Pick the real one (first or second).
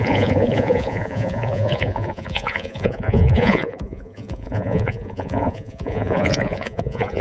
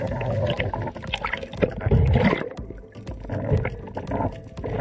second